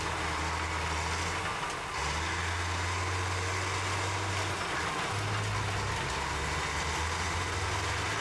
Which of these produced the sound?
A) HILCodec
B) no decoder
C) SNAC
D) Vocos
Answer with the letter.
B